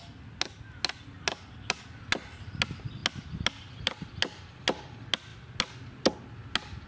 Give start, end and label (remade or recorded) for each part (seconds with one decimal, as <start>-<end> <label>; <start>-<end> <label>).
0.0-6.9 recorded